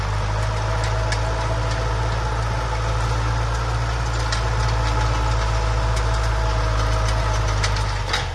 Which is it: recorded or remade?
recorded